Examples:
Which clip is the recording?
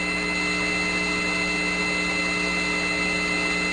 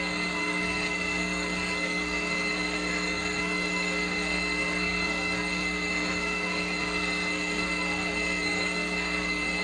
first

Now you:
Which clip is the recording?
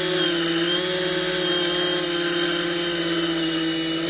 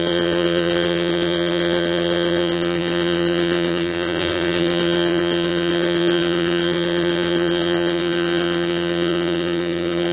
first